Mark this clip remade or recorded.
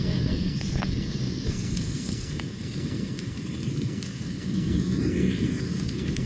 remade